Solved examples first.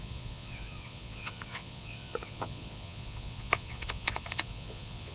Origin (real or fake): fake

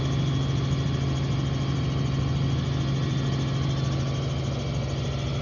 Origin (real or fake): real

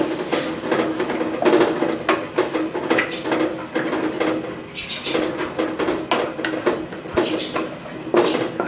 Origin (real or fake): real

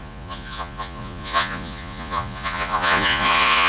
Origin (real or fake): fake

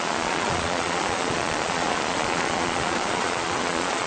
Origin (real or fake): fake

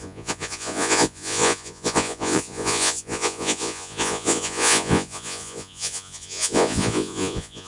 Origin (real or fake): fake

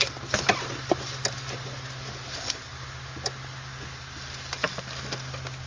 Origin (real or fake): real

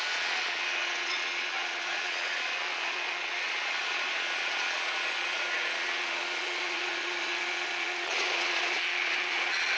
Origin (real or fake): fake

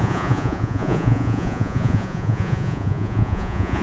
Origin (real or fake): fake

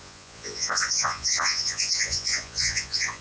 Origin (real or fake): fake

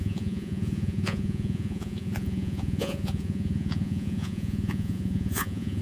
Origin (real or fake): fake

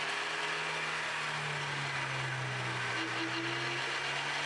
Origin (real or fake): real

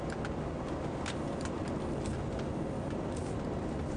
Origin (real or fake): real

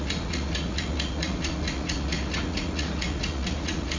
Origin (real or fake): fake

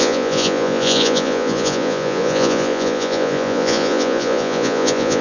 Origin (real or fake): fake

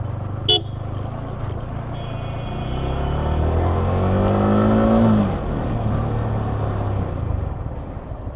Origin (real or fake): real